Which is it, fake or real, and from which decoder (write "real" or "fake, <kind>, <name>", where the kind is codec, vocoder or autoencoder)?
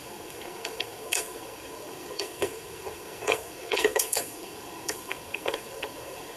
fake, codec, SNAC